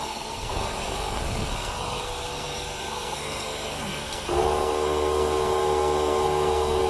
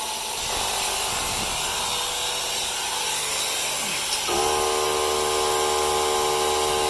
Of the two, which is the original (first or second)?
second